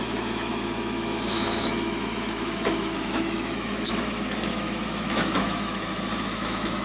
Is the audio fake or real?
fake